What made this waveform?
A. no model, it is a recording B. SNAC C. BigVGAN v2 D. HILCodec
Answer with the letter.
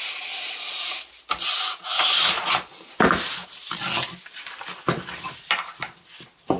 A